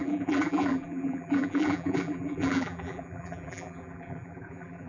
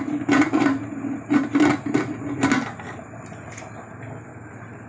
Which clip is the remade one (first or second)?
first